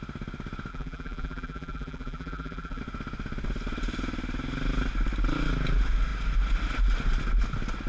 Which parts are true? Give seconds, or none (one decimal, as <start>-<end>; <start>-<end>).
0.0-0.7; 2.8-7.9